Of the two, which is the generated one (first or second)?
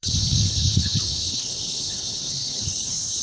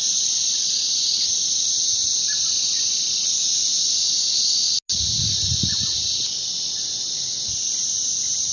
first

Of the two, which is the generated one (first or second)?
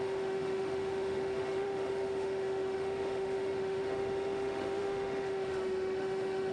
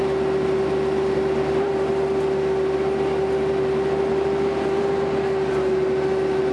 first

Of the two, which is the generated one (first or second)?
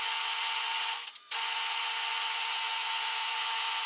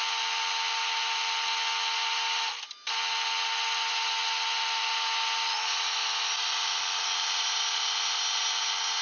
first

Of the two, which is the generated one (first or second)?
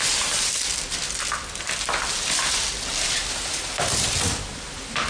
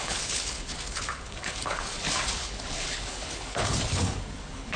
second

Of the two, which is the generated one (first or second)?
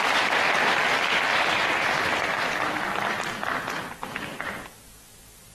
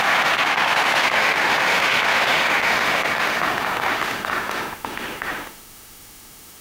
second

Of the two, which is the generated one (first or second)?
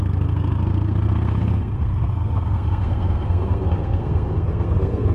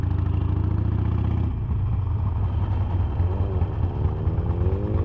first